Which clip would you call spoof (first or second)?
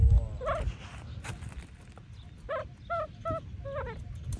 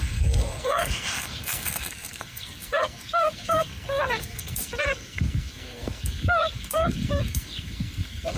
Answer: second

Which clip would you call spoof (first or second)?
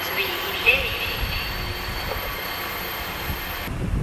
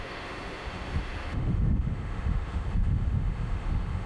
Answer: second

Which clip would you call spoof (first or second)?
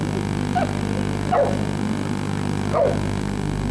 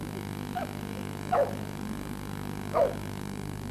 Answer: second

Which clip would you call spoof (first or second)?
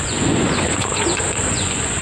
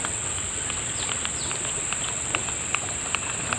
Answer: first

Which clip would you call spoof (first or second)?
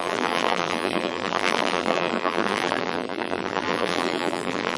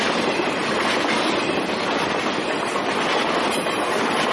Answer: first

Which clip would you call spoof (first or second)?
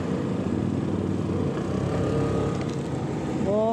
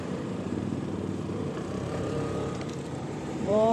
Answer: second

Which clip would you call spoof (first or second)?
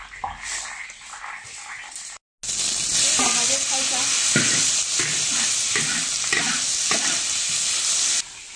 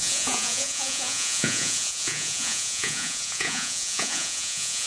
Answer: second